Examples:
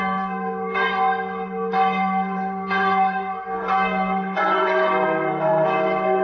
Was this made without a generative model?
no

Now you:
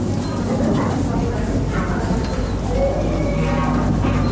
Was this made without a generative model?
yes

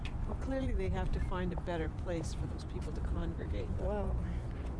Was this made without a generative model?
no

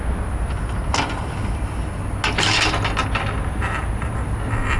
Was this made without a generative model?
yes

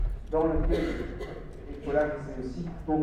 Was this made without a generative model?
yes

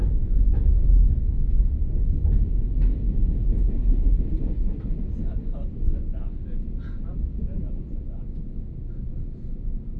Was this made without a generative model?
yes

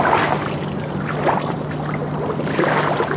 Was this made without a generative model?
yes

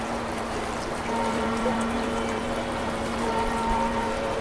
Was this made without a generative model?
no